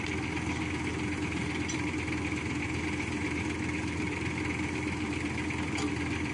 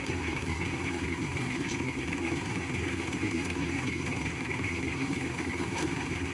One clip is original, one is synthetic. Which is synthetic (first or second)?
second